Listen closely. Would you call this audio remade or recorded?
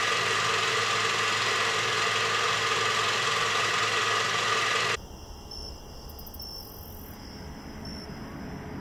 recorded